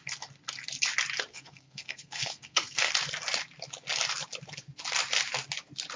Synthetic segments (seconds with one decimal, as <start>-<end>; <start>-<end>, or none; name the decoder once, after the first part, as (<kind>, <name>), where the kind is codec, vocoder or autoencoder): 1.3-2.9 (codec, SNAC)